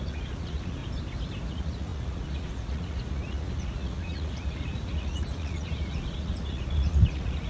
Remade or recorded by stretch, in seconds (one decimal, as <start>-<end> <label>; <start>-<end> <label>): 0.0-0.8 remade; 0.8-1.5 recorded; 1.5-7.5 remade